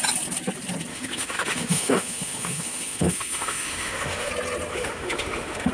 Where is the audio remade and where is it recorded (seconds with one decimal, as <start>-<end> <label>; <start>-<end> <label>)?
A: 0.0-0.9 recorded; 0.9-4.3 remade; 4.3-4.7 recorded; 4.7-5.7 remade